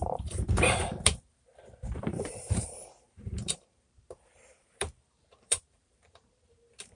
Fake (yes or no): yes